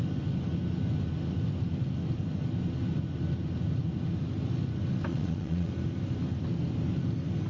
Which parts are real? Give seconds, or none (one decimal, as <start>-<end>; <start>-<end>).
0.0-5.1; 5.7-7.5